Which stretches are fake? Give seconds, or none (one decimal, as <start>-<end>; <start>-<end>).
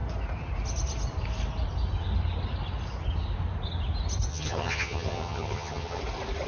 4.3-6.0